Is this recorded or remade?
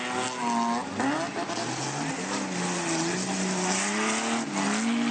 recorded